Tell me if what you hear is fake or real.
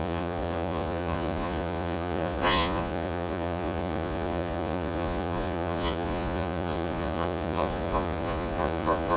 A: fake